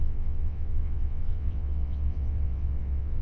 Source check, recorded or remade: remade